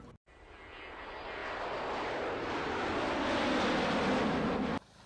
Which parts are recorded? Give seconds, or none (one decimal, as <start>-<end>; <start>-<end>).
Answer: 0.0-5.1